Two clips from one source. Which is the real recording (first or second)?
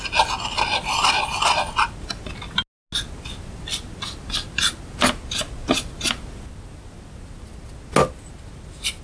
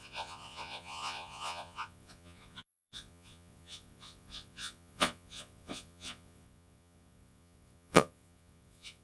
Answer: first